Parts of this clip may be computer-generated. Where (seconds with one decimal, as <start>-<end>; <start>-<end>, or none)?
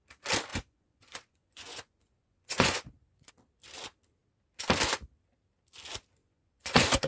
0.5-3.3; 6.2-7.1